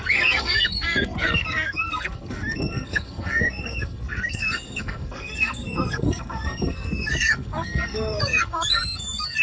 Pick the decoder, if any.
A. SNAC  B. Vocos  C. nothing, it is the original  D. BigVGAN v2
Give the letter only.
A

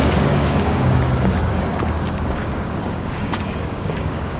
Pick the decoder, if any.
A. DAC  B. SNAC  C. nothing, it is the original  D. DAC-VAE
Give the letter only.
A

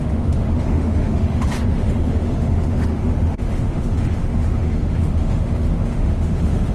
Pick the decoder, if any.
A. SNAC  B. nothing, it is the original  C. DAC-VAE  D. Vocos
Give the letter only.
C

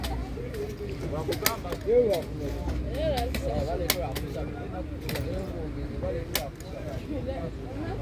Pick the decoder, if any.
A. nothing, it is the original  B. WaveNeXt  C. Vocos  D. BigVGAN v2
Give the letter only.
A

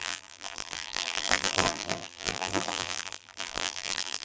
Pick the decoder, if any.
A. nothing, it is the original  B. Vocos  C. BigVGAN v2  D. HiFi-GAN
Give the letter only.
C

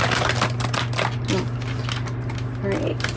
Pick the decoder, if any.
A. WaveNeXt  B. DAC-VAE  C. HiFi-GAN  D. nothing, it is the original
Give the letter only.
D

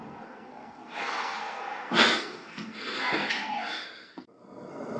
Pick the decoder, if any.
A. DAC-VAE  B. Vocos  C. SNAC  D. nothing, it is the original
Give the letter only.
C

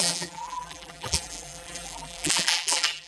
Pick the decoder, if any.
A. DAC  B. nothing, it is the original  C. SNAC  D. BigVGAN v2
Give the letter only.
D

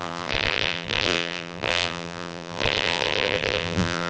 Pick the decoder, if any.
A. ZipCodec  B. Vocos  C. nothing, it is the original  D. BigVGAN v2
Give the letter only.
D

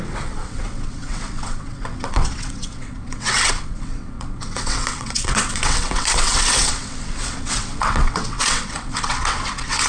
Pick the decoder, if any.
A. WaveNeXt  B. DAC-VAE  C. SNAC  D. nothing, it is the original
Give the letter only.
A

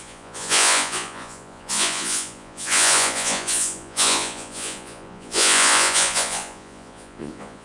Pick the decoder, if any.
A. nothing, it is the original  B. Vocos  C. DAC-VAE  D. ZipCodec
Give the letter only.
B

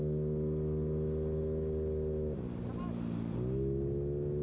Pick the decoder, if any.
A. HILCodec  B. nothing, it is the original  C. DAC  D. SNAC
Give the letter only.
B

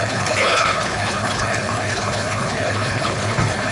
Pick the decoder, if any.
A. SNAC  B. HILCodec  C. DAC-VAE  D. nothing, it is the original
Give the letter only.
B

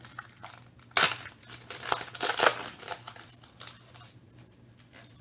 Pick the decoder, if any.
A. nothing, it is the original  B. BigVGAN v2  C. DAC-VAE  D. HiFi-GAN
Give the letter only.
A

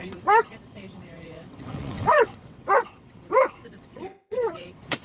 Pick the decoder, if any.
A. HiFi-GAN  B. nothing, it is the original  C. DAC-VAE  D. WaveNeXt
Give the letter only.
D